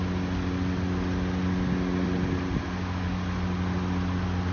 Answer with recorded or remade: recorded